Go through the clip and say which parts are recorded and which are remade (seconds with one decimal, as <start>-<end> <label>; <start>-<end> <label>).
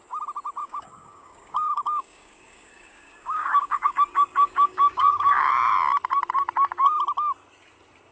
0.0-0.6 recorded; 0.6-5.5 remade; 5.5-8.1 recorded